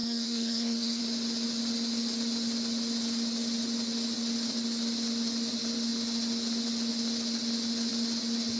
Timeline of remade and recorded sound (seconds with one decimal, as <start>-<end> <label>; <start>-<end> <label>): 0.0-1.0 remade; 1.0-8.6 recorded